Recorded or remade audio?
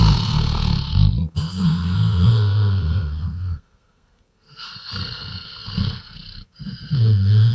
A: remade